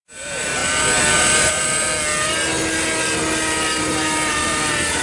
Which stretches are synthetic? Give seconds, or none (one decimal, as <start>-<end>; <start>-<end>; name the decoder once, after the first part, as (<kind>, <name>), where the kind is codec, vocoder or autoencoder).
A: 0.0-1.9 (vocoder, BigVGAN v2); 3.8-5.0